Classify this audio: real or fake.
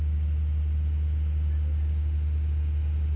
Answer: real